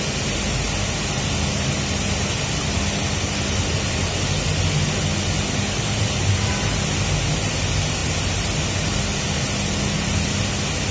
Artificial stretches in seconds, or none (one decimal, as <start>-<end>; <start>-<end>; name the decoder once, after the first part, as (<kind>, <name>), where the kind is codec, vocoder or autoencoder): none